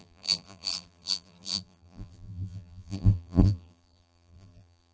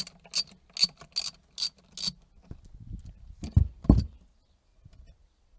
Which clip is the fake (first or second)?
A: first